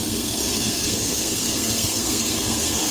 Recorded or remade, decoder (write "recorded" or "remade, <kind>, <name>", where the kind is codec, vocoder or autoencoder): remade, codec, SNAC